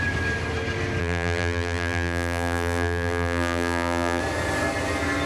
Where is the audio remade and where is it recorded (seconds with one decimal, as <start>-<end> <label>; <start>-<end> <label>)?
0.0-1.0 recorded; 1.0-4.2 remade; 4.2-5.3 recorded